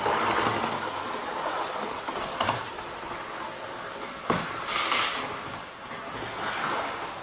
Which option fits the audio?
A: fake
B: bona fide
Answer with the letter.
B